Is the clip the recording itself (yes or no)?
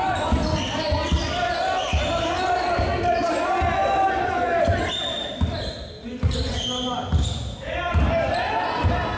yes